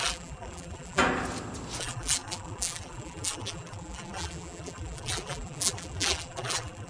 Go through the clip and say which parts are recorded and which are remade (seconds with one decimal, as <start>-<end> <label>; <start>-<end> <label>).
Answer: 0.0-1.0 remade; 1.0-1.8 recorded; 1.8-6.9 remade